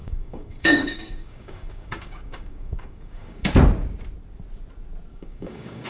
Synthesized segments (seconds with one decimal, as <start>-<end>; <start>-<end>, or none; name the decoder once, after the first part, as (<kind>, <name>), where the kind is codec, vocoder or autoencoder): 0.0-3.5 (codec, DAC); 5.1-5.9